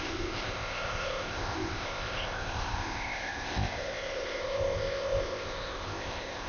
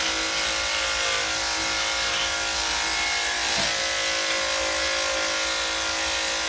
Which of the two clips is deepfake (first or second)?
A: first